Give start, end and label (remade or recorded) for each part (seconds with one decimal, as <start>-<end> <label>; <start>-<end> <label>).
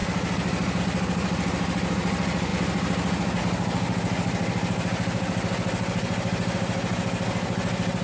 0.0-8.0 recorded